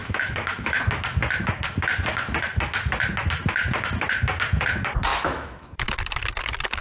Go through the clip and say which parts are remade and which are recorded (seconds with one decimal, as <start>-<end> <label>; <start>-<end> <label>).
0.0-0.9 remade; 0.9-5.1 recorded; 5.1-6.0 remade; 6.0-6.8 recorded

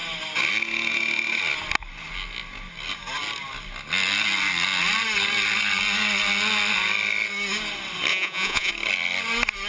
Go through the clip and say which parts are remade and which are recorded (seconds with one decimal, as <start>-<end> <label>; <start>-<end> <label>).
0.0-8.1 recorded; 8.1-8.7 remade; 8.7-9.7 recorded

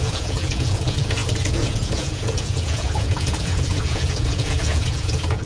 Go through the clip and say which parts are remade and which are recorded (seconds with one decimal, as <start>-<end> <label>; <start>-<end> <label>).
0.0-5.5 remade

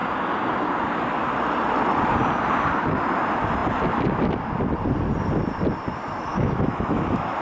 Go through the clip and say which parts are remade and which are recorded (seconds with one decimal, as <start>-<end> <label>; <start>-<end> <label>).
0.0-6.3 recorded; 6.3-7.0 remade; 7.0-7.4 recorded

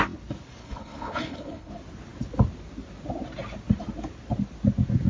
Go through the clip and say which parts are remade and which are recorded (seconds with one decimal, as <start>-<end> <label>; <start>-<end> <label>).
0.0-0.6 recorded; 0.6-1.7 remade; 1.7-5.1 recorded